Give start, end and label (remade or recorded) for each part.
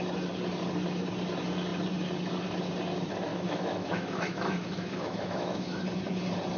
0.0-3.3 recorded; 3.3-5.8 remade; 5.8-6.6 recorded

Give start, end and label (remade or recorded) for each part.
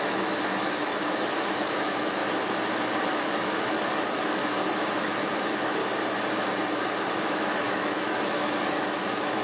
0.0-2.2 remade; 2.2-3.0 recorded; 3.0-4.4 remade; 4.4-5.0 recorded; 5.0-5.8 remade; 5.8-7.0 recorded; 7.0-9.4 remade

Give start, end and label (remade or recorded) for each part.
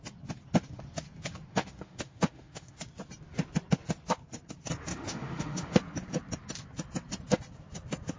0.0-1.5 recorded; 1.5-2.8 remade; 2.8-4.9 recorded; 4.9-5.8 remade; 5.8-8.2 recorded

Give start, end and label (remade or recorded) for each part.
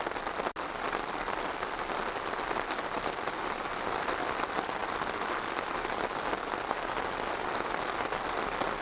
0.0-8.8 recorded